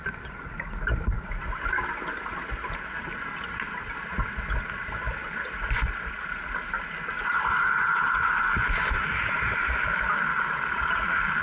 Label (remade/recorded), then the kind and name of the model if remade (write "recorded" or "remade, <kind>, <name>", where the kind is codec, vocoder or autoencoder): recorded